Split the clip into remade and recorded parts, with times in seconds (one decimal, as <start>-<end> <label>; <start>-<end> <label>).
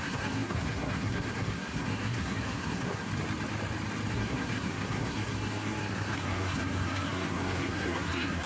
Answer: 0.0-3.1 remade; 3.1-4.1 recorded; 4.1-8.5 remade